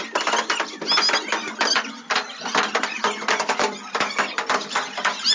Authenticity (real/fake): real